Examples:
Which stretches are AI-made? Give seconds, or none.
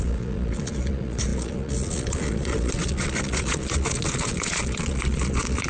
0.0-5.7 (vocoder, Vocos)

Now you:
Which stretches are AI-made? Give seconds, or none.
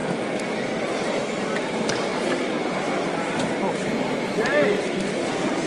none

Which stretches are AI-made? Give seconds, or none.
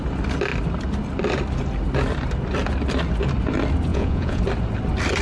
3.9-4.4 (vocoder, Vocos)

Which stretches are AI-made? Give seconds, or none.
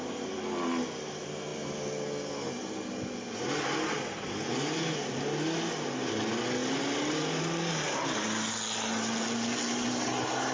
none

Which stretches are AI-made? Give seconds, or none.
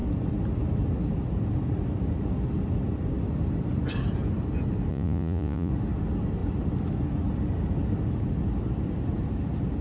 4.9-5.7 (vocoder, Vocos)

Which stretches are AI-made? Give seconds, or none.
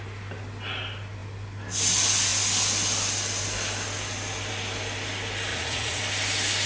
5.5-6.0 (vocoder, Vocos)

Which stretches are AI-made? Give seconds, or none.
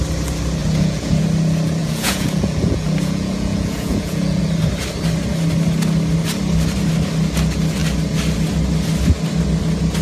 0.6-1.2 (vocoder, Vocos); 1.8-4.4